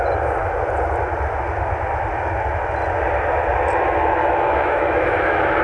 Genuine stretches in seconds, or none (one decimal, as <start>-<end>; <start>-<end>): 0.0-4.2

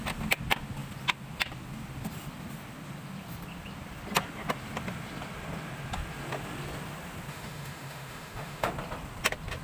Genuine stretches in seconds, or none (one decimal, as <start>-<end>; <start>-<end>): 0.0-7.3; 8.7-9.6

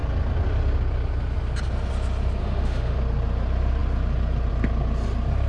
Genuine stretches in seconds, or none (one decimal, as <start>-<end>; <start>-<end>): 0.0-2.4; 3.0-5.5

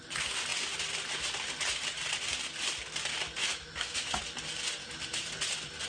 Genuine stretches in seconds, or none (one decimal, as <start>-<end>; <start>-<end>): 0.0-3.4; 4.2-4.8; 5.3-5.9

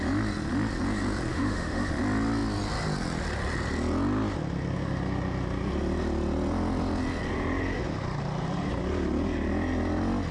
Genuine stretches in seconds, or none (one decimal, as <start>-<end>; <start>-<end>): 0.0-1.3; 1.9-10.3

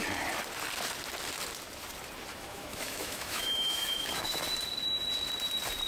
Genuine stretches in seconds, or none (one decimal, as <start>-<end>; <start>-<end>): 0.0-2.3; 4.4-5.9

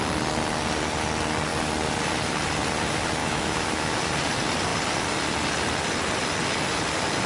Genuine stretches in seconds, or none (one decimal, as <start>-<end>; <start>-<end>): 0.0-3.2; 3.9-7.3